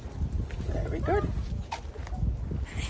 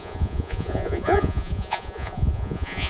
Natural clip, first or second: first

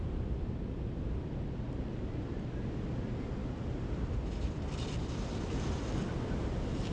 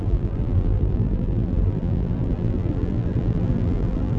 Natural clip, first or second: first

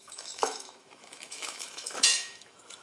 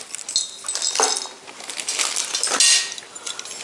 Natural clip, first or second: second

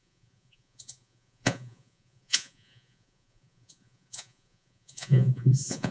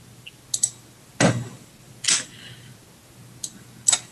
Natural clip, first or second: second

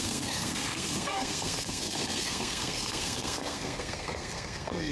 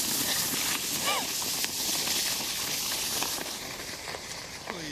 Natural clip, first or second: second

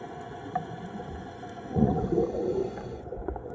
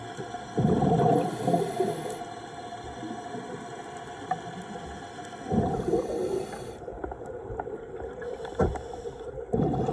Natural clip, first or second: second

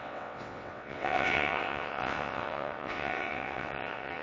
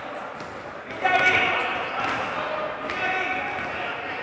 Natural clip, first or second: second